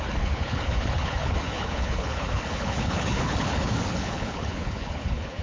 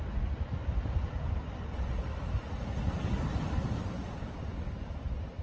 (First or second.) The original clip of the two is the second